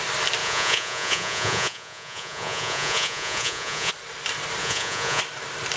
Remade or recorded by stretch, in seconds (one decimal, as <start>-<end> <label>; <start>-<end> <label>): 0.0-0.4 recorded; 0.4-3.9 remade; 3.9-4.6 recorded; 4.6-5.2 remade; 5.2-5.8 recorded